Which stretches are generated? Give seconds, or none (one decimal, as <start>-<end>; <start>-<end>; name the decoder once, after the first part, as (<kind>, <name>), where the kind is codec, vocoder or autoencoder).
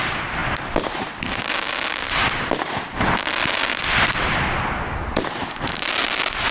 0.0-0.4 (vocoder, BigVGAN v2); 2.1-6.5